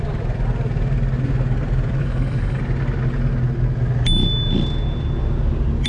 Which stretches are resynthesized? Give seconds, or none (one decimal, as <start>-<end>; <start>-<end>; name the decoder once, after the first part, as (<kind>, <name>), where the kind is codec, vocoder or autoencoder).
2.0-2.6 (codec, DAC)